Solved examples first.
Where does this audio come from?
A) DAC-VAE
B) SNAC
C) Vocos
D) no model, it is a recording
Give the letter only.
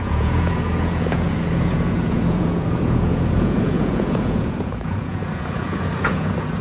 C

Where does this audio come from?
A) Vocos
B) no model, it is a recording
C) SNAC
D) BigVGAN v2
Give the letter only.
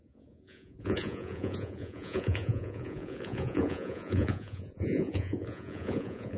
A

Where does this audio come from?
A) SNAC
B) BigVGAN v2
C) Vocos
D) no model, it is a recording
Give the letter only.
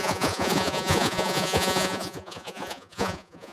C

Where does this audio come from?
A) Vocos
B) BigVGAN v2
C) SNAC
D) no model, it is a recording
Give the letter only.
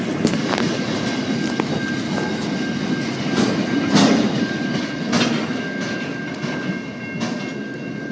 D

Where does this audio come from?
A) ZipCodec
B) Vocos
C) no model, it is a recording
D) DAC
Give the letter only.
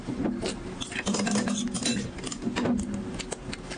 C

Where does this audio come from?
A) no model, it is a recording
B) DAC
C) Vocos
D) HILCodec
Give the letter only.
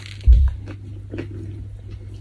A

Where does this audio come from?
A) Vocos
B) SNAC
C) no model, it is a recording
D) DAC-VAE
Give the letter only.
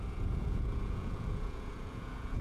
A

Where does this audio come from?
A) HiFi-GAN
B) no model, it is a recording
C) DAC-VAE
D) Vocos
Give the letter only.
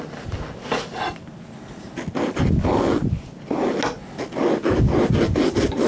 B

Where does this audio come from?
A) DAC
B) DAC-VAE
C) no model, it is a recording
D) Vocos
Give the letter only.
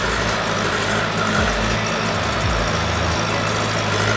C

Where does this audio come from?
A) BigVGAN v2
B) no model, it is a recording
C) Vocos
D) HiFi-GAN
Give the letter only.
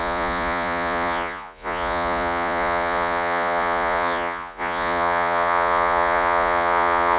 C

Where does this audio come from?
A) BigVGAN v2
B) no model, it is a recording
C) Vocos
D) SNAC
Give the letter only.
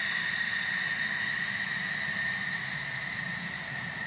B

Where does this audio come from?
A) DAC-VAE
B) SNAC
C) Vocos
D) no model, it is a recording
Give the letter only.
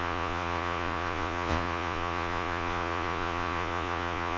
C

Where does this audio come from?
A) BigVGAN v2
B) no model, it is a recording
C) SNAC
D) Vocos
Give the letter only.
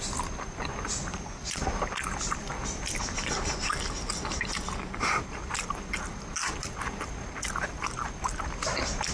B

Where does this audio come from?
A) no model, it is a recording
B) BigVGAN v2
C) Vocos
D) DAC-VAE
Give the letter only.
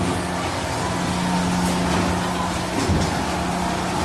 A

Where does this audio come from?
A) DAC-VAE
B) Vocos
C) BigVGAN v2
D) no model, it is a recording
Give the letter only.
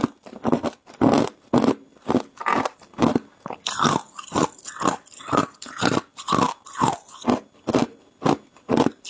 D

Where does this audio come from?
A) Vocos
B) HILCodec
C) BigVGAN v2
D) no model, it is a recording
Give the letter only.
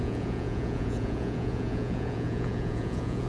A